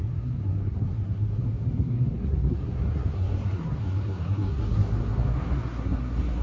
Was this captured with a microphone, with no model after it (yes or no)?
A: no